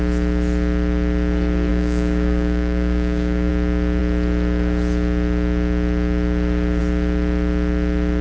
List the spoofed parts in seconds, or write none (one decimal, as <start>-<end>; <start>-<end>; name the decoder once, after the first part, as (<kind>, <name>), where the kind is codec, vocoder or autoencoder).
1.7-3.5 (codec, DAC)